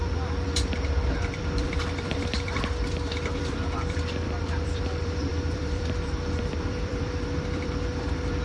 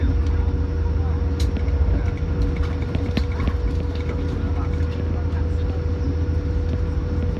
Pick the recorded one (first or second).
second